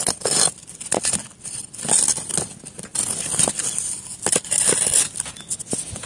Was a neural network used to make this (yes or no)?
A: no